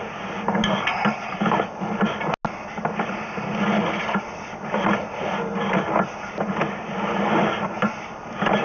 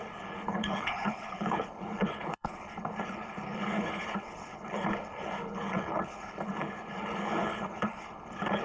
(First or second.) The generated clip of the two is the second